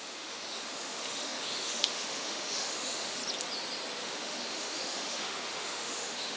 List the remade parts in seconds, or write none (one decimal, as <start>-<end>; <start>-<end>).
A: 0.0-3.2; 4.0-6.4